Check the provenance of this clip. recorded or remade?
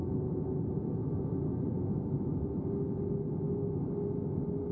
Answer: recorded